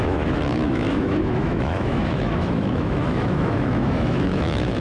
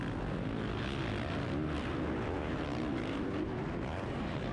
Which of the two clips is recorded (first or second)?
second